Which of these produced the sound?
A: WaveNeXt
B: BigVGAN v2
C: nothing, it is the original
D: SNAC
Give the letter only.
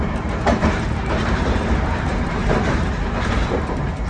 B